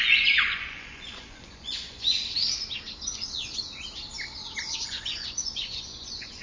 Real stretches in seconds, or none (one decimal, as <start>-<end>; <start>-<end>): 2.2-3.1; 3.6-4.8